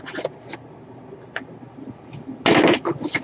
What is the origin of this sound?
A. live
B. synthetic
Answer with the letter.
A